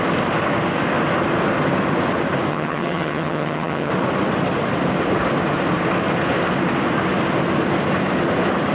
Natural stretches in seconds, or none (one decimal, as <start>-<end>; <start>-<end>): 0.0-2.5; 3.9-8.7